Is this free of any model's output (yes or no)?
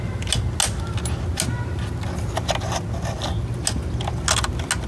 yes